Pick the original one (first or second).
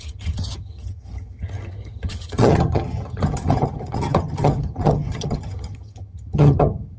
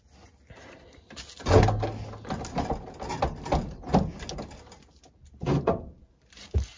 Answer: second